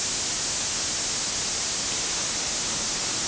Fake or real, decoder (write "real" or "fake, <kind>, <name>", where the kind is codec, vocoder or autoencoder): real